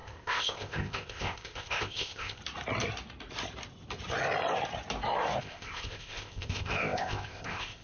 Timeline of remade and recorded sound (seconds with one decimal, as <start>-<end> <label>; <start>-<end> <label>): 0.0-2.4 remade; 2.4-5.4 recorded; 5.4-7.8 remade